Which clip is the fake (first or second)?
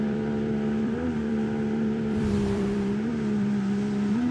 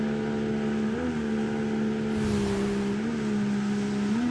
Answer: first